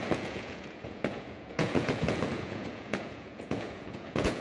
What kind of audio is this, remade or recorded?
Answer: remade